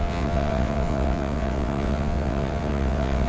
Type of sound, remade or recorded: remade